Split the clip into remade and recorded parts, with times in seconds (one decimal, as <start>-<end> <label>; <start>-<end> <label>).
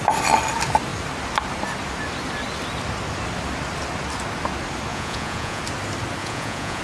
0.0-4.9 recorded; 4.9-5.6 remade; 5.6-6.2 recorded; 6.2-6.8 remade